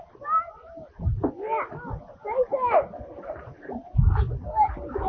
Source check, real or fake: real